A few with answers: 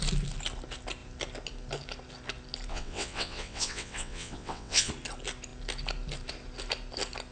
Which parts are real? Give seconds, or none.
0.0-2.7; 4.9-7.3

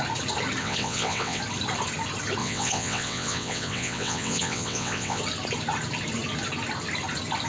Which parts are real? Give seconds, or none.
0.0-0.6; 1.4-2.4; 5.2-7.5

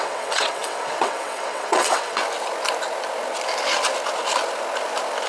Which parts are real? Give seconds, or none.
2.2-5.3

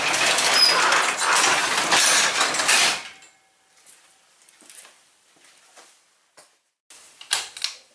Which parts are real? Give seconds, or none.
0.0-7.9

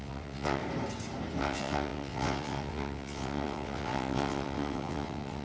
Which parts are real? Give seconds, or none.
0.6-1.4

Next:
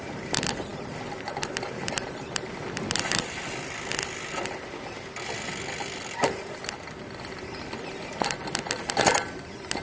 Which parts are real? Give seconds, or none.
0.0-9.8

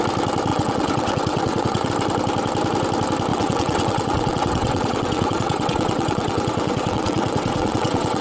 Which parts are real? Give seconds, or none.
0.0-0.5; 1.9-3.3